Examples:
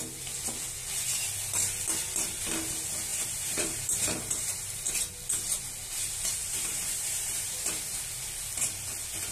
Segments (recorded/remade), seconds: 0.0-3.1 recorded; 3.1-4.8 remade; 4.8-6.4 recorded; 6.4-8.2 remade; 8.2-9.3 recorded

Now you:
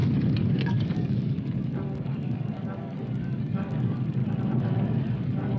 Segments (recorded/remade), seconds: 0.0-4.2 remade; 4.2-5.0 recorded; 5.0-5.6 remade

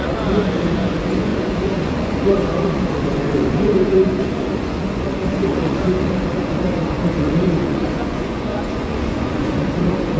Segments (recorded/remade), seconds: 0.0-10.2 remade

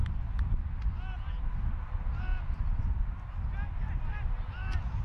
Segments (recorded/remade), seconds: 0.0-5.0 recorded

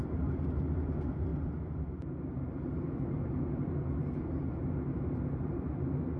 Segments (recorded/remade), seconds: 0.0-6.2 remade

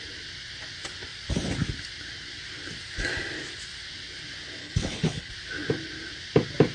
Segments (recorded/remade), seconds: 0.0-4.6 recorded; 4.6-5.3 remade; 5.3-6.7 recorded

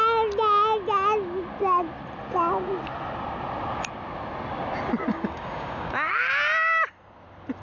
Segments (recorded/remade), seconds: 0.0-5.1 recorded; 5.1-6.1 remade; 6.1-7.6 recorded